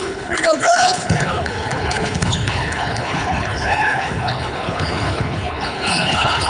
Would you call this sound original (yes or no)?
no